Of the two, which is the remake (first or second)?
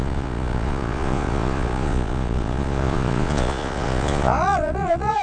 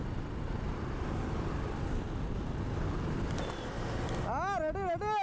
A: first